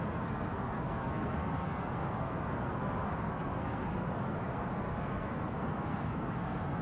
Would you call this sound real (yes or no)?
no